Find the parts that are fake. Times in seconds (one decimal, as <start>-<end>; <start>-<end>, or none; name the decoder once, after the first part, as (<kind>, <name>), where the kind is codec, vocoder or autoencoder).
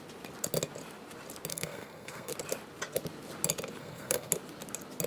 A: 1.5-2.3 (codec, SNAC); 3.8-4.3